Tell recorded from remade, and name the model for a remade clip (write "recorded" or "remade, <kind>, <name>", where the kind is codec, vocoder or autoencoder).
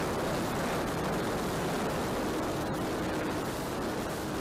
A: recorded